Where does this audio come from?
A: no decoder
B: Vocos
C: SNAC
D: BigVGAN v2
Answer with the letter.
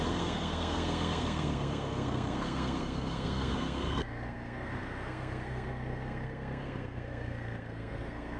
C